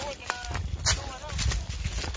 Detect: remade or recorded recorded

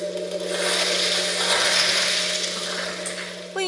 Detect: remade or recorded recorded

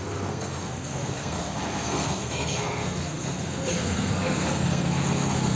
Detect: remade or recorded remade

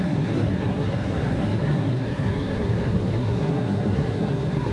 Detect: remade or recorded remade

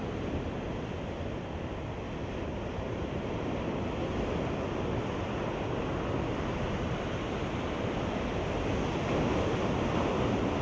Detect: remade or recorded recorded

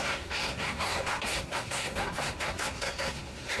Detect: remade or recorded remade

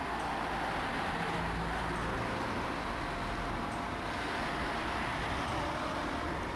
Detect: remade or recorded recorded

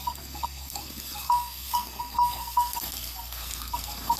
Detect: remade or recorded remade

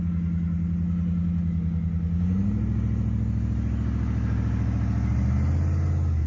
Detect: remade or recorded recorded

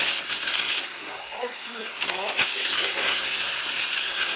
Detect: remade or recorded remade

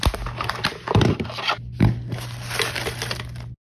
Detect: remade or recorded recorded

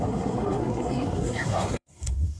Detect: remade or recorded remade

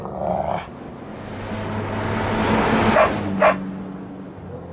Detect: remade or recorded recorded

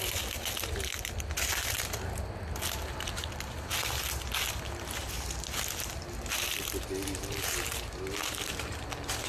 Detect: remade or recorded recorded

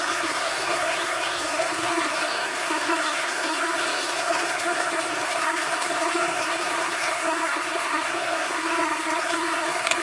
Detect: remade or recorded remade